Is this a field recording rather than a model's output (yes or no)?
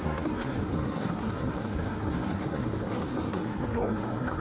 no